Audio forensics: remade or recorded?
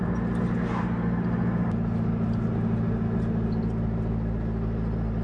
recorded